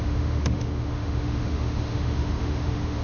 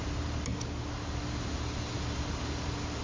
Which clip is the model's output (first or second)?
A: first